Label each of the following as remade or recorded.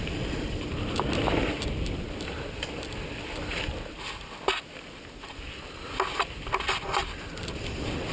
recorded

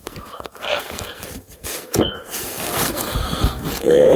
remade